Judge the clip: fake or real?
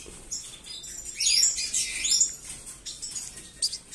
real